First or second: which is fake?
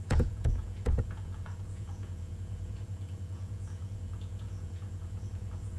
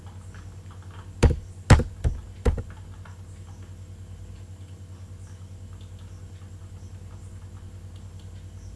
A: first